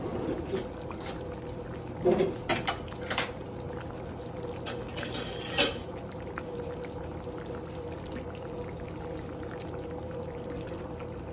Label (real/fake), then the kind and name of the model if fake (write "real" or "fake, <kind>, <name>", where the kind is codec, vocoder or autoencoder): real